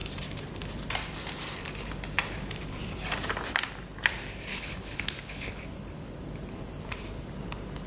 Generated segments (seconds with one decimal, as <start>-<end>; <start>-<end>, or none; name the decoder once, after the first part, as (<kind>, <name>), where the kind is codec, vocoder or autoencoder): 4.5-5.6 (codec, HILCodec)